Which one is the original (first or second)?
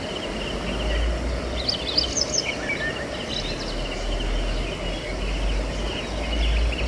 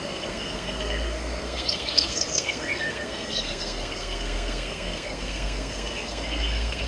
first